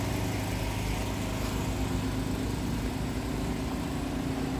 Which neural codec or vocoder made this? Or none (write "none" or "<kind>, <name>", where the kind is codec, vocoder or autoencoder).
none